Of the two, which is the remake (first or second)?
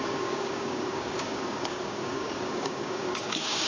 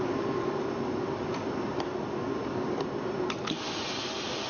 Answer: first